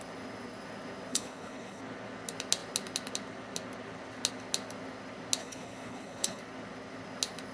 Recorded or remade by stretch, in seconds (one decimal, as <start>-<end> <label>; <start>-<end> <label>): 0.0-1.1 recorded; 1.1-1.8 remade; 1.8-5.4 recorded; 5.4-6.4 remade; 6.4-7.5 recorded